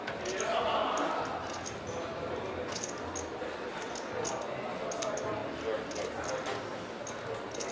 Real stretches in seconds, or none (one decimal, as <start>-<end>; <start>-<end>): 0.0-7.7